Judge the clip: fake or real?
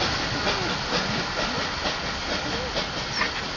real